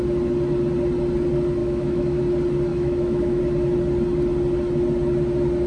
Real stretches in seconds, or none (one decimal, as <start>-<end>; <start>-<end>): 0.0-1.6; 2.2-2.7; 3.4-5.7